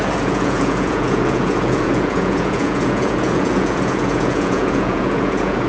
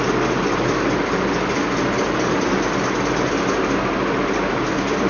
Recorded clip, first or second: second